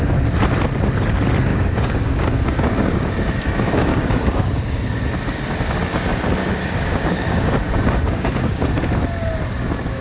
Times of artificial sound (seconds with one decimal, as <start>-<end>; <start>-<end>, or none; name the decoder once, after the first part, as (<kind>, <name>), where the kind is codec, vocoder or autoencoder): 1.5-3.1 (codec, DAC); 3.9-4.9; 6.4-8.6

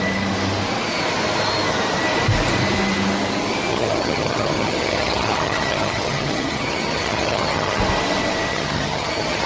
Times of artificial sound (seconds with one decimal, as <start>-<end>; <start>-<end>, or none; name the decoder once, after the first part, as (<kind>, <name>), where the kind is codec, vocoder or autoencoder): 3.7-7.8 (vocoder, HiFi-GAN); 8.5-9.5